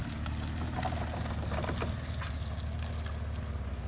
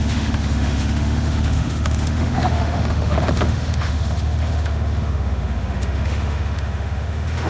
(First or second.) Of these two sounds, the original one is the first